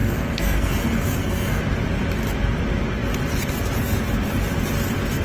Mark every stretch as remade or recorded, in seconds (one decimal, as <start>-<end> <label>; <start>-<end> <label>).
0.0-1.6 remade; 1.6-5.2 recorded